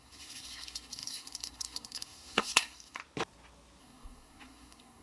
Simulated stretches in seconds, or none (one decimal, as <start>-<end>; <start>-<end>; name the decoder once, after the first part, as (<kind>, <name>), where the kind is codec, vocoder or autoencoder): 0.0-3.0 (codec, SNAC); 3.8-5.0

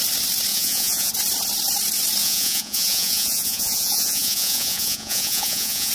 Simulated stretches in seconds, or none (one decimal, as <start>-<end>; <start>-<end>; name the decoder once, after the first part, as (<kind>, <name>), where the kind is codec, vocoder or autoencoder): 0.5-1.1 (vocoder, Vocos); 2.2-5.9

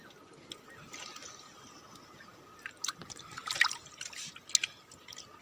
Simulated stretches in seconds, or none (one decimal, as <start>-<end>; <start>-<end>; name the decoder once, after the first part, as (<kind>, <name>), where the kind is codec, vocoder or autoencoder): none

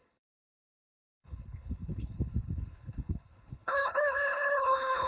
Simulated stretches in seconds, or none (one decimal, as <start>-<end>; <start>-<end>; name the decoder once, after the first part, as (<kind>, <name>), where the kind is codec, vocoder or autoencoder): 0.0-5.1 (codec, HILCodec)

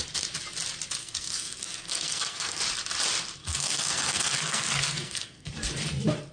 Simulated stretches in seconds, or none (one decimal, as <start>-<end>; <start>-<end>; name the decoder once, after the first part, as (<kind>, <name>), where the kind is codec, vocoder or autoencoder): 1.0-2.6 (codec, SNAC); 3.4-5.5

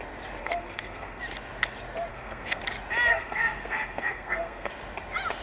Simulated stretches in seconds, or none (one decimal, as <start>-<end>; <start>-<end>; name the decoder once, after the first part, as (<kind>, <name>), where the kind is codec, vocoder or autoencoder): 0.4-1.2 (codec, SNAC); 2.1-2.6; 3.1-4.7

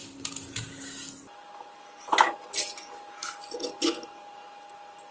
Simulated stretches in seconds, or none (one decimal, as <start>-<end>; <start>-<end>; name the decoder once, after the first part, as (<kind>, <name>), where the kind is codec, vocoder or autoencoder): 0.0-1.5 (vocoder, BigVGAN v2); 3.2-5.1

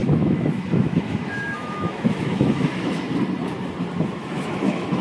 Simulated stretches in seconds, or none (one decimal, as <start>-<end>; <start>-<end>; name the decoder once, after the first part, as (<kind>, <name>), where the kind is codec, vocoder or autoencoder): 0.0-3.0 (autoencoder, DAC-VAE); 4.2-5.0